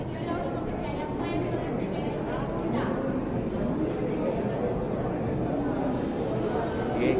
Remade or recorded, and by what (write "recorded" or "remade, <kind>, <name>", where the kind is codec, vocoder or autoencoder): recorded